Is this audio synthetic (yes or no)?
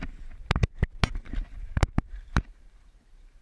yes